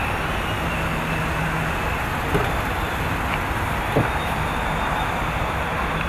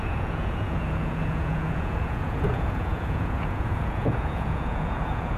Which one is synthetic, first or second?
second